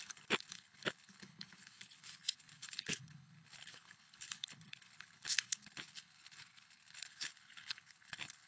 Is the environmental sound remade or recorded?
remade